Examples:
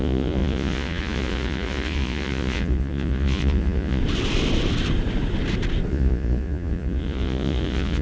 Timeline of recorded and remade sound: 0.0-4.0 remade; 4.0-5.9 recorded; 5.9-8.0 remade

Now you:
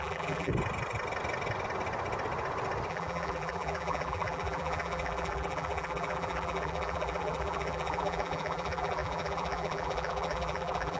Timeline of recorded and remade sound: 0.0-0.5 remade; 0.5-2.9 recorded; 2.9-11.0 remade